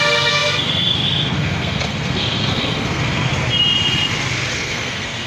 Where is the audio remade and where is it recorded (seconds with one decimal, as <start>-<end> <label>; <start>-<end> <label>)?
0.0-3.3 remade; 3.3-4.5 recorded; 4.5-5.3 remade